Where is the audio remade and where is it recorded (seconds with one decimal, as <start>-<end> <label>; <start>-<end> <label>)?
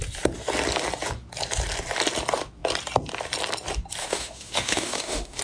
0.0-4.0 recorded; 4.0-5.4 remade